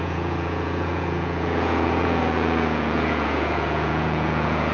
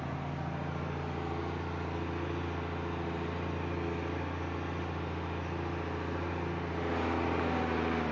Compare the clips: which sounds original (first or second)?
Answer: second